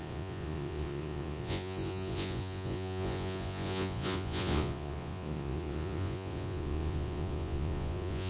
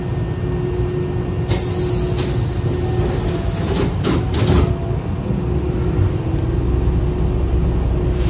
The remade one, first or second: first